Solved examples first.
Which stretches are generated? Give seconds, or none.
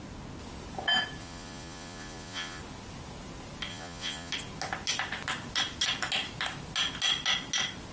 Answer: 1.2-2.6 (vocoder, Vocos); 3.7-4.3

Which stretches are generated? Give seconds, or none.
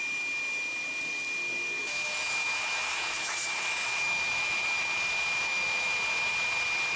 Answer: 1.8-6.0 (autoencoder, DAC-VAE)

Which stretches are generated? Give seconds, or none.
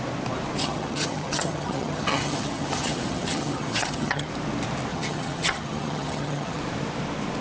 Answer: 0.6-4.3 (vocoder, HiFi-GAN); 4.9-6.6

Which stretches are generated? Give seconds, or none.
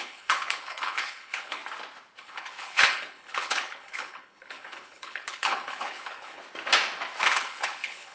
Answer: 0.0-1.6 (codec, HILCodec); 2.2-6.4; 7.2-8.1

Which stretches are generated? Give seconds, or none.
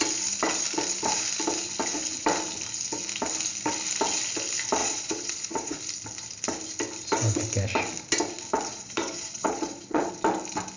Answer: 4.8-5.8 (vocoder, Vocos); 8.7-10.1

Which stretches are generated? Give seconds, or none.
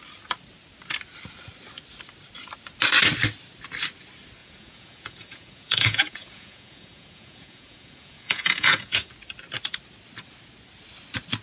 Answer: 4.4-9.1 (vocoder, Vocos)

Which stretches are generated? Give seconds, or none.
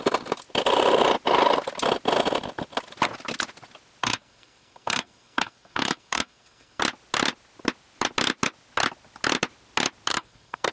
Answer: 4.0-6.8 (codec, SNAC); 10.1-10.7